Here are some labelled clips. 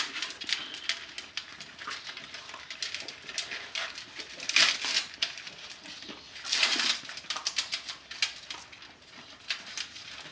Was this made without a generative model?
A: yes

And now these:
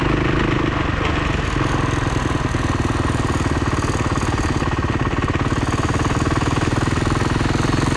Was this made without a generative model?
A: yes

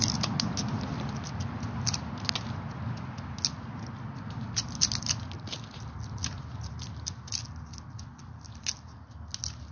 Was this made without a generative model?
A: yes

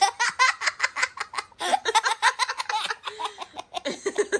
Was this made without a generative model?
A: yes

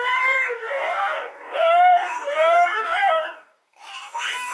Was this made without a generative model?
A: no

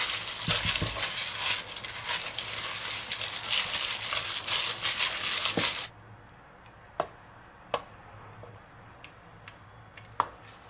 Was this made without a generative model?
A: yes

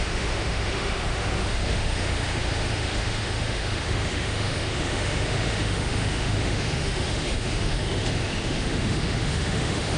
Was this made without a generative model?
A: no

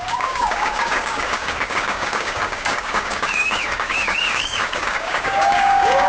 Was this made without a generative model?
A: no